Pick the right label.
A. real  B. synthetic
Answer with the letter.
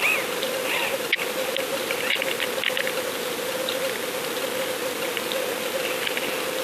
A